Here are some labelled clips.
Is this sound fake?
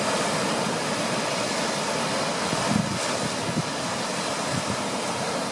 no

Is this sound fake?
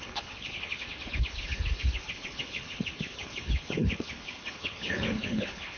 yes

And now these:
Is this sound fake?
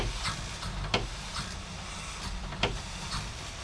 no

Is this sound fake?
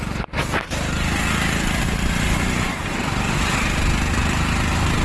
no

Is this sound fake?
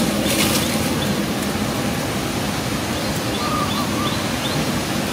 no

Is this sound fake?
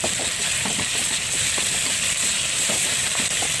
yes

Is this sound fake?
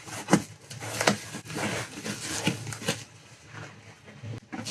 no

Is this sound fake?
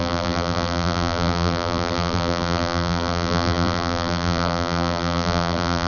yes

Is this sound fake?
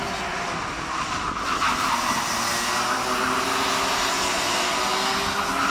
no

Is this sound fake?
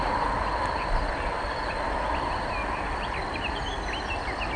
no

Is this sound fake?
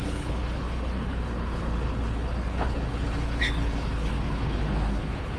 yes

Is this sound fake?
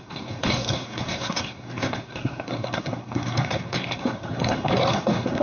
yes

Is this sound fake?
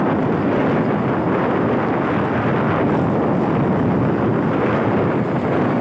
no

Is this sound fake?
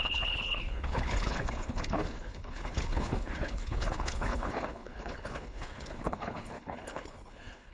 yes